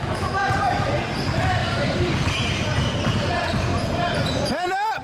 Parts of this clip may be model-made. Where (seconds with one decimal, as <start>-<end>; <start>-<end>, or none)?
1.6-2.2